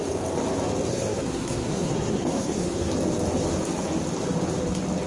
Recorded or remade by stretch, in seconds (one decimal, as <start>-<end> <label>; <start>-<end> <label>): 0.0-0.9 recorded; 0.9-2.9 remade; 2.9-5.1 recorded